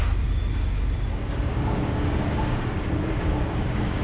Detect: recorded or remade remade